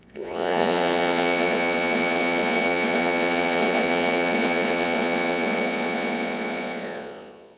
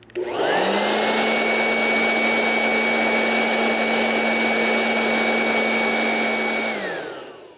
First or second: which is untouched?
second